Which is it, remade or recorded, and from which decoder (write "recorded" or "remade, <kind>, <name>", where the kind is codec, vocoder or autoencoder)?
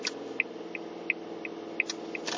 recorded